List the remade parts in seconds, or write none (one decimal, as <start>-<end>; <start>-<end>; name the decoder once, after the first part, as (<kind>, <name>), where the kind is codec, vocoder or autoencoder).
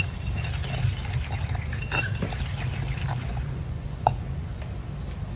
3.2-4.6 (vocoder, Vocos)